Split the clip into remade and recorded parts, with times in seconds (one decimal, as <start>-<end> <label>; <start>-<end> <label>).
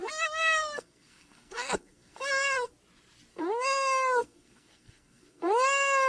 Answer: 0.0-2.7 remade; 2.7-3.3 recorded; 3.3-6.1 remade